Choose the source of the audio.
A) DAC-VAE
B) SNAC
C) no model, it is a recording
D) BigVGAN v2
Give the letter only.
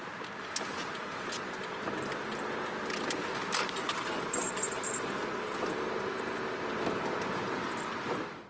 C